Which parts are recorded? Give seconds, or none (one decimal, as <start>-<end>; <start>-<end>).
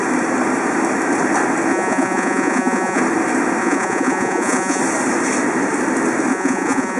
0.0-1.7; 3.0-3.6; 4.8-6.3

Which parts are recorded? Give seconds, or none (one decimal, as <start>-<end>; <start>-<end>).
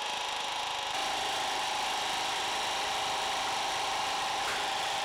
0.0-5.0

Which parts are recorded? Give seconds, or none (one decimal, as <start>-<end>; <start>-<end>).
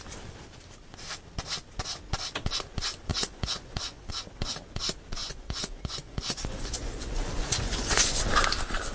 0.0-3.1; 4.1-5.2; 8.3-8.9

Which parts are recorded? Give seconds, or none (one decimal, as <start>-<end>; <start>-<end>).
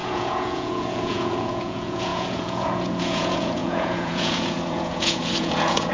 none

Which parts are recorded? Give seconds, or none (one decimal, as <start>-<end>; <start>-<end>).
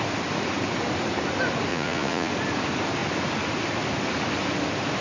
0.0-1.7; 2.3-5.0